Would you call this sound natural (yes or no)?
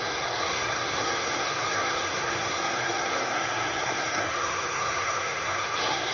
no